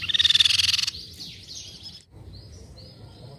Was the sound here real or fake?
real